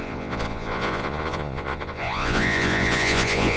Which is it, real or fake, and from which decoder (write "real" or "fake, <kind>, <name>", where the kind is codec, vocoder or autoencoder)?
fake, vocoder, Vocos